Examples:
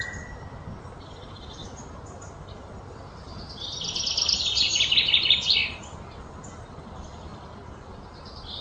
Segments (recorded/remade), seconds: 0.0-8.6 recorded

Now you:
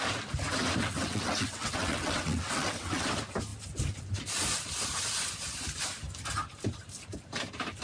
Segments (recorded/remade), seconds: 0.0-0.8 recorded; 0.8-3.1 remade; 3.1-7.8 recorded

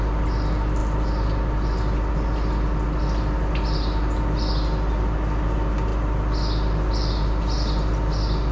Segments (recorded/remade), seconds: 0.0-8.5 recorded

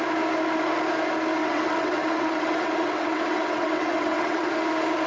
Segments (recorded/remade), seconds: 0.0-1.4 recorded; 1.4-4.5 remade; 4.5-5.1 recorded

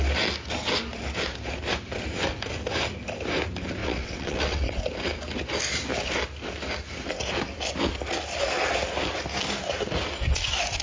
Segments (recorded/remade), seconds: 0.0-3.8 recorded; 3.8-4.8 remade; 4.8-10.8 recorded

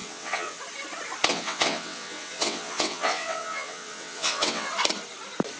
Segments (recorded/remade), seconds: 0.0-0.6 remade; 0.6-1.3 recorded; 1.3-4.7 remade; 4.7-5.6 recorded

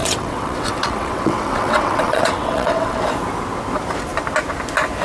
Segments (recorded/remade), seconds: 0.0-3.0 remade; 3.0-5.0 recorded

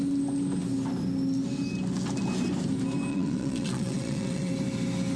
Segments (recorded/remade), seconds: 0.0-3.1 recorded; 3.1-4.5 remade; 4.5-5.2 recorded